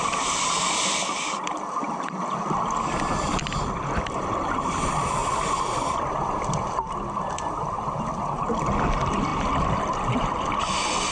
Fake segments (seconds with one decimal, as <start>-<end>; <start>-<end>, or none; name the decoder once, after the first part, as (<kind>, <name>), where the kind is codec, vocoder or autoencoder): 0.0-5.2 (vocoder, BigVGAN v2); 5.9-9.3; 10.6-11.1